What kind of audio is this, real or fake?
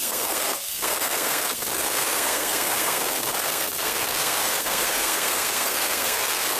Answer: fake